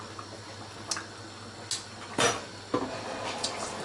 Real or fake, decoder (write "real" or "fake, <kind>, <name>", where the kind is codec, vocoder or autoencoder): real